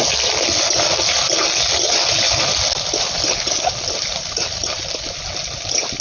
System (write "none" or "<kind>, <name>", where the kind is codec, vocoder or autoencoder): none